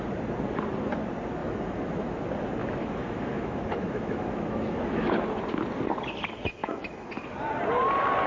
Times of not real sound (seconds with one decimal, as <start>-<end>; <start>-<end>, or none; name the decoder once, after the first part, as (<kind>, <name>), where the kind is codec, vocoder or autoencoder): 1.4-2.2 (autoencoder, DAC-VAE); 2.6-5.1; 6.6-7.1

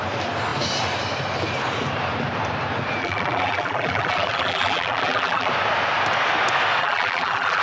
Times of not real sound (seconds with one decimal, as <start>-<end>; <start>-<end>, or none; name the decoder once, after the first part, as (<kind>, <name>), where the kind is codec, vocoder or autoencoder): 3.0-5.5 (vocoder, BigVGAN v2); 6.8-7.6

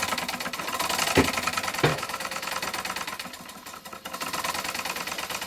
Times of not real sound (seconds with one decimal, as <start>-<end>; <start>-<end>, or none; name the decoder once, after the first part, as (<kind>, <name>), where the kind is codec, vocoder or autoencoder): 1.9-2.5 (autoencoder, DAC-VAE)

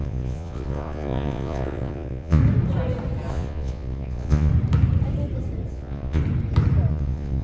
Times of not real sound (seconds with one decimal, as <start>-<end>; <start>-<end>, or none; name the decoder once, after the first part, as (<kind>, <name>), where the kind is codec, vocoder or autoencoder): 0.0-2.4 (vocoder, Vocos); 3.3-4.5; 5.7-6.2; 6.9-7.4

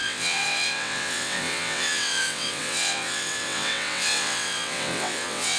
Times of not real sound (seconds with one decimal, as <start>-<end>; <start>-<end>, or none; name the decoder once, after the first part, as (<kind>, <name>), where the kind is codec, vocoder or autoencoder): 0.0-5.6 (vocoder, WaveNeXt)

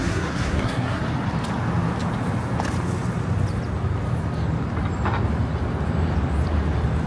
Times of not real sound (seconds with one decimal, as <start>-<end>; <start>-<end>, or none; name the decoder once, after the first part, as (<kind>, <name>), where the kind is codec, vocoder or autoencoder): 0.0-1.0 (codec, SNAC)

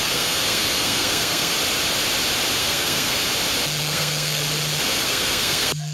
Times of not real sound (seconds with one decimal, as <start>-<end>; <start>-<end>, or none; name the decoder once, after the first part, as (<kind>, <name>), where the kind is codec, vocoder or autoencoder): 0.0-1.5 (codec, SNAC); 2.6-3.2; 3.8-4.4; 5.0-5.9

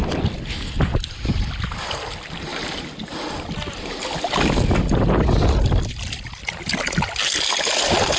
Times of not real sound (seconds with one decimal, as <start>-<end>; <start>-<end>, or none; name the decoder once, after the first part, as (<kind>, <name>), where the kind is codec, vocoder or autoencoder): none